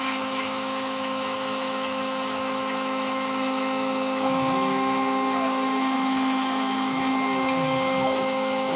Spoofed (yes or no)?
yes